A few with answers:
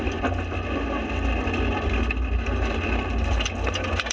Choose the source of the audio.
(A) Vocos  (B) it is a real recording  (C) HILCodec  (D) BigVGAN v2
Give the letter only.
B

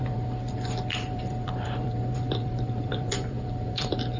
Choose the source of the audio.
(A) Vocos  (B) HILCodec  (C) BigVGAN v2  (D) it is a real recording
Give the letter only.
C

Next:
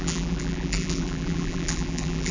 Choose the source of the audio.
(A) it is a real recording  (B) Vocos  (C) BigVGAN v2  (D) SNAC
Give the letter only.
C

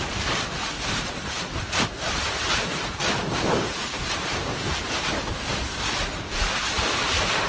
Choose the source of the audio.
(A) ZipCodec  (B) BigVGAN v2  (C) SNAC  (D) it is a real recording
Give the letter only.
B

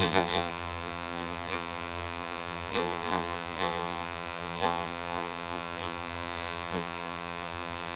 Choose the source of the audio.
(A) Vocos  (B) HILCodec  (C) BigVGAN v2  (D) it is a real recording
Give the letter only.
C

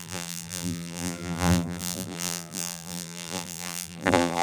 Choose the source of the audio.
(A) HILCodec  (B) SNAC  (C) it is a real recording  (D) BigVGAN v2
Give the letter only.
D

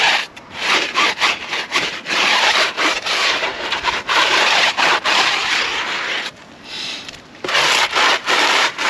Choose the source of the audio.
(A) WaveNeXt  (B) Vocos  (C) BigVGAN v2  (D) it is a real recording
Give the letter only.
C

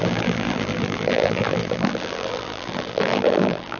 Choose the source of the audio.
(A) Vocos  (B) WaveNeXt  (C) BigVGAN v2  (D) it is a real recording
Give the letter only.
C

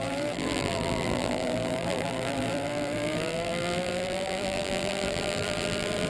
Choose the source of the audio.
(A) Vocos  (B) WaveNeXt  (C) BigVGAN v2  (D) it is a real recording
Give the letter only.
C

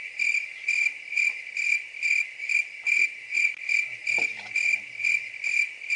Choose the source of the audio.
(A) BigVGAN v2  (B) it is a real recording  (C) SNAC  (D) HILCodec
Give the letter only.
B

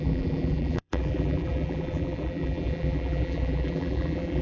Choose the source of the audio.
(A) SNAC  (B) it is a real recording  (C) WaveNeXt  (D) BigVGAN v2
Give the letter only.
D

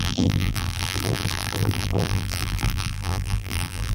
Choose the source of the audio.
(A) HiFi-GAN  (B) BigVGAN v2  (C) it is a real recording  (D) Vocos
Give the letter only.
B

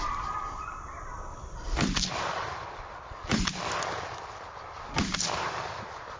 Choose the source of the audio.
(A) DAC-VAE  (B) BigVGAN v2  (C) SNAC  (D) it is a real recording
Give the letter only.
B